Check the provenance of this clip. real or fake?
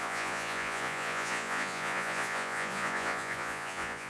fake